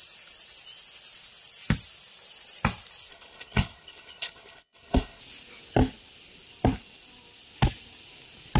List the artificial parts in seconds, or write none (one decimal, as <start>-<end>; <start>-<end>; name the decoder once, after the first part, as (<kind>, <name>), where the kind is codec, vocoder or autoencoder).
3.1-5.2 (codec, HILCodec)